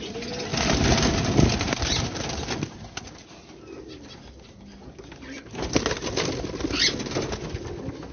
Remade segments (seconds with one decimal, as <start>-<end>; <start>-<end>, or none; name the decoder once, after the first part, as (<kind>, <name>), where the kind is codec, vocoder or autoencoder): 0.5-4.4 (vocoder, BigVGAN v2)